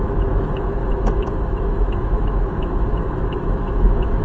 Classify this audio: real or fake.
fake